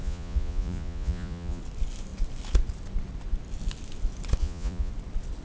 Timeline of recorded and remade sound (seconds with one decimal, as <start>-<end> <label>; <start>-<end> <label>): 0.0-1.6 remade; 1.6-4.4 recorded; 4.4-4.9 remade; 4.9-5.4 recorded